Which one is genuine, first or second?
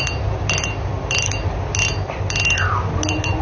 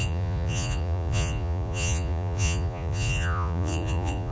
first